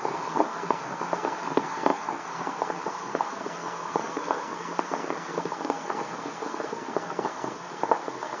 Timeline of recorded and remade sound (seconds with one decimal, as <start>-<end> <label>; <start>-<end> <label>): 0.0-8.4 remade